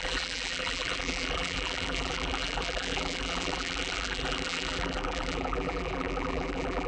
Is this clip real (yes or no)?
no